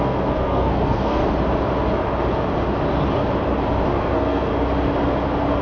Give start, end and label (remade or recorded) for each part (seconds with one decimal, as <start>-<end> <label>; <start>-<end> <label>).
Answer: 0.0-1.2 remade; 1.2-4.0 recorded; 4.0-4.5 remade; 4.5-5.6 recorded